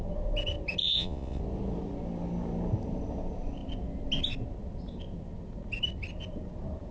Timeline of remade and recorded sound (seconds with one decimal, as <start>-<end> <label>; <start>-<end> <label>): 0.0-0.8 recorded; 0.8-1.4 remade; 1.4-6.9 recorded